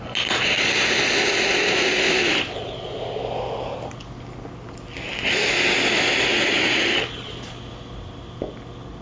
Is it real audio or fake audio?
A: real